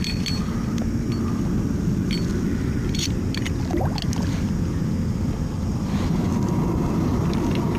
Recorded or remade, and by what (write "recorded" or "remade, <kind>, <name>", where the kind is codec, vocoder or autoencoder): recorded